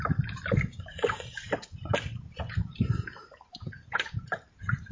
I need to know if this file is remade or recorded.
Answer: remade